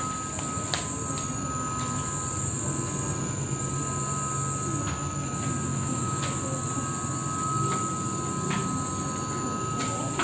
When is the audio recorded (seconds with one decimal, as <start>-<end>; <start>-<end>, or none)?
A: 0.0-5.7; 6.2-10.2